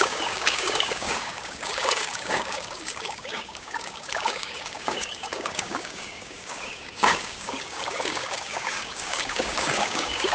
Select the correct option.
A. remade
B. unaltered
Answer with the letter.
A